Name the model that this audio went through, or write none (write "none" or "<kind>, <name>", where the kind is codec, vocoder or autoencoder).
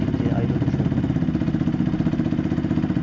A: vocoder, BigVGAN v2